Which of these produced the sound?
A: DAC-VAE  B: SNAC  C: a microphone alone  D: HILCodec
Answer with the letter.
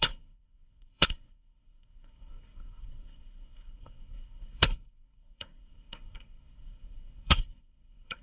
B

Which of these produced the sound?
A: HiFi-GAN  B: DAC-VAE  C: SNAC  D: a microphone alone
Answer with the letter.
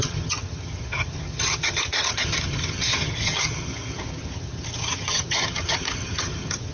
A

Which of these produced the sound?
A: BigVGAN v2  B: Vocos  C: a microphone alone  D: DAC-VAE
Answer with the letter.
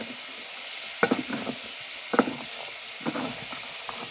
C